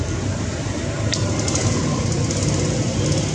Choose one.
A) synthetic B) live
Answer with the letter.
B